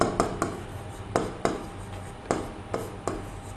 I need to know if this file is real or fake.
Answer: real